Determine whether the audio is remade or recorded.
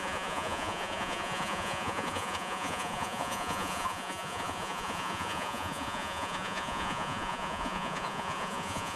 remade